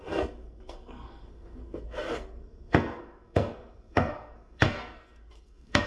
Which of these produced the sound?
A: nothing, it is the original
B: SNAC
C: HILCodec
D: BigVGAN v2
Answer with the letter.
B